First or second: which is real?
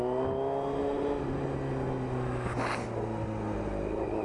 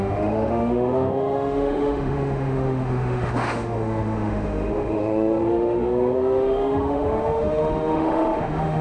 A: first